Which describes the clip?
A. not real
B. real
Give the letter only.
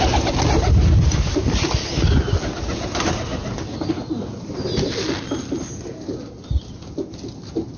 B